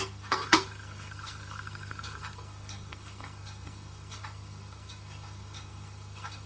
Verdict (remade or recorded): remade